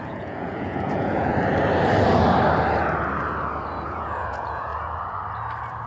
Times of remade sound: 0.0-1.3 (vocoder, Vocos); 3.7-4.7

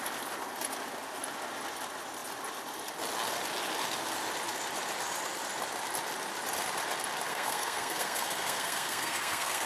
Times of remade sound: 7.3-9.7 (codec, SNAC)

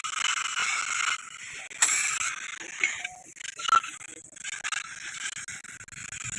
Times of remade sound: none

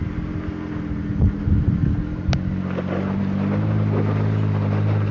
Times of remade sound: none

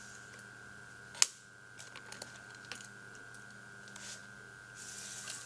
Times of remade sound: none

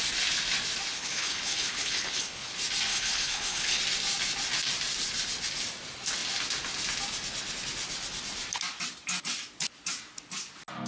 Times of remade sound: 0.9-2.5 (codec, HILCodec); 2.9-3.8

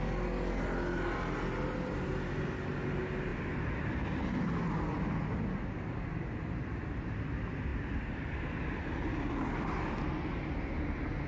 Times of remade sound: none

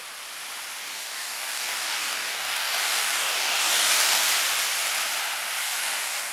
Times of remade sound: 0.8-4.3 (codec, DAC); 5.6-6.3